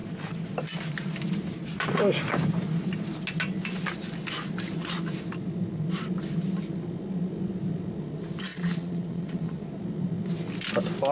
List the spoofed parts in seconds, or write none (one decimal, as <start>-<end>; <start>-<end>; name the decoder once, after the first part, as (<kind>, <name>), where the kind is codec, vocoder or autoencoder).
8.5-9.6 (vocoder, Vocos)